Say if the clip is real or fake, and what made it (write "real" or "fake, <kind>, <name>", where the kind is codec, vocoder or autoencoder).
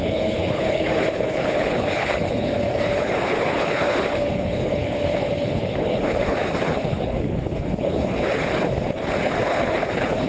fake, codec, HILCodec